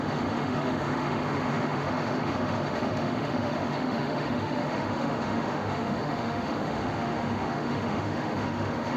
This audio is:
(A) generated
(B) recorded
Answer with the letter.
A